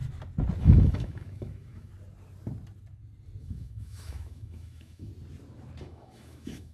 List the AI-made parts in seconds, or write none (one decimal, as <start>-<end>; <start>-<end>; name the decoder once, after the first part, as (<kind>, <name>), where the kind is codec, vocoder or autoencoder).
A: 0.6-1.9 (autoencoder, DAC-VAE); 3.4-5.1; 5.8-6.7